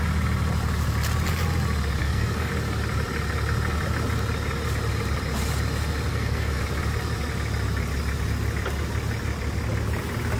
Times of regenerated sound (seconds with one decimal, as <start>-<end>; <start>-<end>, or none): 2.0-2.5; 6.1-6.6